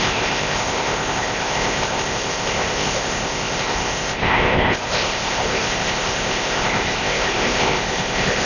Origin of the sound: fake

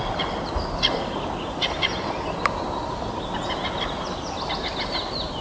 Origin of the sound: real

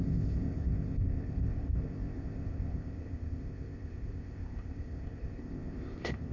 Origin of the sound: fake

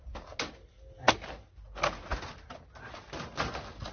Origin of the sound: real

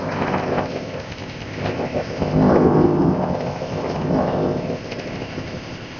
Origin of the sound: fake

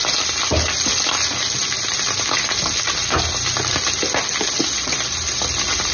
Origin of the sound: real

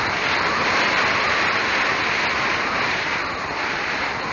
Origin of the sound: real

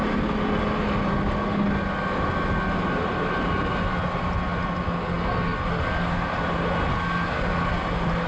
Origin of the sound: real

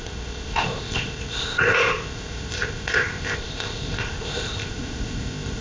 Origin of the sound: fake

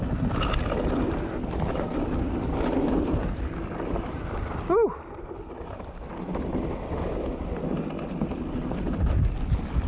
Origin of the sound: real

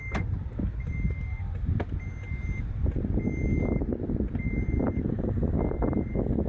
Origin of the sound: real